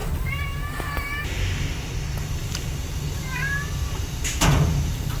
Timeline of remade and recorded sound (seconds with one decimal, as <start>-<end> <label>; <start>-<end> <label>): 0.0-1.2 remade; 1.2-2.4 recorded; 2.4-4.0 remade; 4.0-5.2 recorded